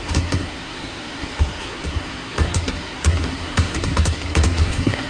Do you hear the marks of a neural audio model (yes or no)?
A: yes